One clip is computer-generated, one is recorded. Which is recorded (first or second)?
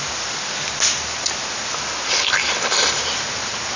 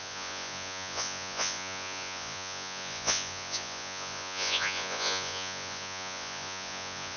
first